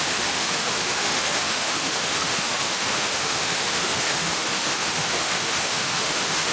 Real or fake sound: fake